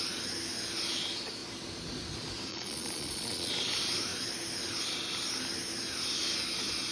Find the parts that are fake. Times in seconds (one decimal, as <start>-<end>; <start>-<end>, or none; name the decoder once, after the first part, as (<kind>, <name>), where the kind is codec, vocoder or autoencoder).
2.5-3.5 (vocoder, Vocos)